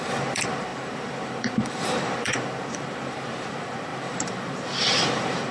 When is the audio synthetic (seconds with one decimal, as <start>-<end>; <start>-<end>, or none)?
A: 0.0-5.5